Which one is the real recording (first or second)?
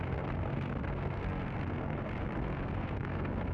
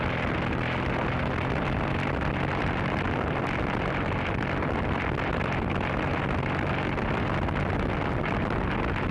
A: second